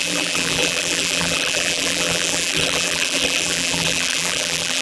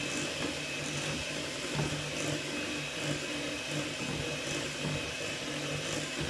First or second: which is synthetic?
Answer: first